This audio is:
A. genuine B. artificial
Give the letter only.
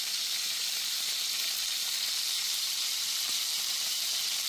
B